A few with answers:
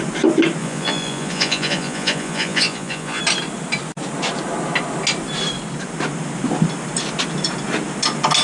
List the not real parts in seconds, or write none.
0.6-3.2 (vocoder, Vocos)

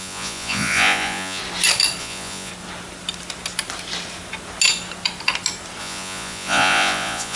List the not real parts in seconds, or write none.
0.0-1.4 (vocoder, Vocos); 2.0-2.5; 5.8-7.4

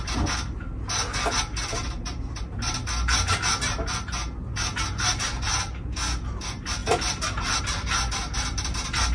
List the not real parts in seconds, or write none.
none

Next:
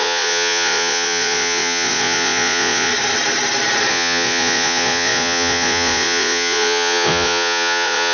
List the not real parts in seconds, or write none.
0.0-2.9 (vocoder, Vocos); 3.9-8.1

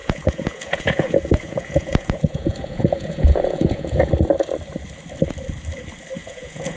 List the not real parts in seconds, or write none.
0.0-4.1 (vocoder, Vocos); 6.2-6.8

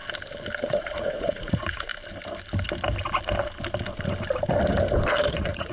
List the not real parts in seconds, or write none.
0.7-1.9 (vocoder, Vocos); 5.3-5.7

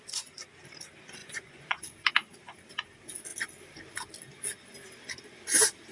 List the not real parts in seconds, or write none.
1.2-2.1 (vocoder, Vocos)

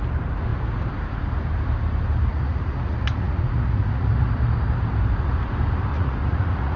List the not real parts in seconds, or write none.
2.3-4.3 (vocoder, Vocos); 5.9-6.8